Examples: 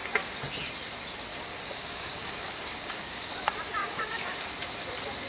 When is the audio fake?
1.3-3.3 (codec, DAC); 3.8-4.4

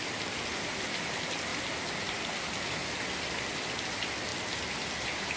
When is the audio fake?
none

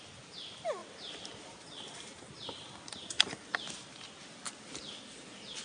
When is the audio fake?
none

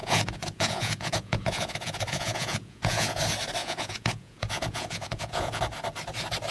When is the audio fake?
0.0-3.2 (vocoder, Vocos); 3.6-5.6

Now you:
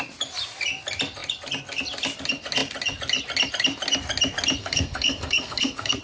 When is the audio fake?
4.6-6.0 (codec, SNAC)